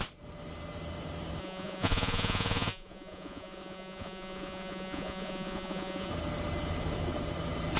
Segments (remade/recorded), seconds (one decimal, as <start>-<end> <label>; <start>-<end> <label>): 0.0-1.4 recorded; 1.4-6.1 remade; 6.1-7.8 recorded